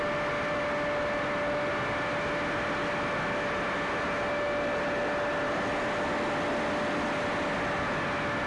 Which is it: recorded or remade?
recorded